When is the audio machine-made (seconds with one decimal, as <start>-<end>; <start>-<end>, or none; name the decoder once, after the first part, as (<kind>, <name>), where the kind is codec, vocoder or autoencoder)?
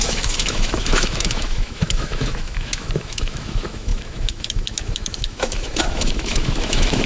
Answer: 0.0-7.1 (autoencoder, DAC-VAE)